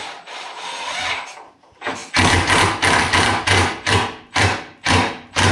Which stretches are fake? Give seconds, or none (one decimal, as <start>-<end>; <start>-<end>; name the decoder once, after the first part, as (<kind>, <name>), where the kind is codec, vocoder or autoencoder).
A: none